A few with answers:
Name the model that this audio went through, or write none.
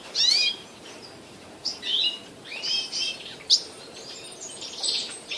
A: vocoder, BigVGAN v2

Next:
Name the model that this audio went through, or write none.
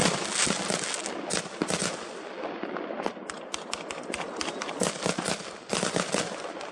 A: none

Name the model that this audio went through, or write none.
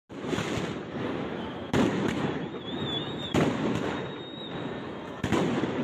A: none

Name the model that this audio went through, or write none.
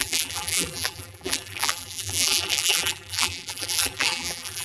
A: vocoder, BigVGAN v2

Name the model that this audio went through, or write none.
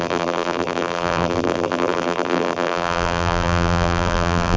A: vocoder, BigVGAN v2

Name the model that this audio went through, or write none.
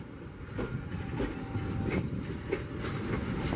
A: none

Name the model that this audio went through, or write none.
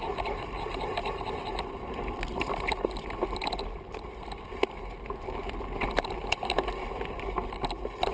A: none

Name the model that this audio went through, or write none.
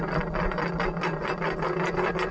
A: none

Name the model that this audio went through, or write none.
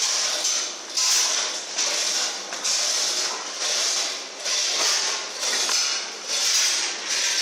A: none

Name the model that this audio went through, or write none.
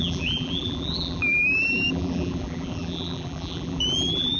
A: vocoder, BigVGAN v2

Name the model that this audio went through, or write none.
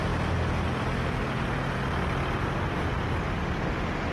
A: none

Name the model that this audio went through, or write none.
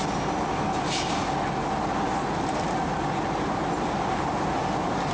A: none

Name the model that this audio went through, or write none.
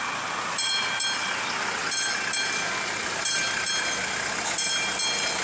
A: none